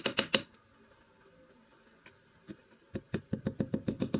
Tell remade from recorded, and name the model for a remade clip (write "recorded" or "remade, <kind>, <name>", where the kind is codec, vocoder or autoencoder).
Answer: recorded